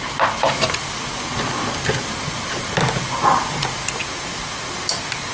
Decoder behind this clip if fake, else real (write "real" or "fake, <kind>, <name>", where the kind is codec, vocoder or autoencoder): real